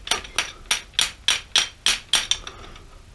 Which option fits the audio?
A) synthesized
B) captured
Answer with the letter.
B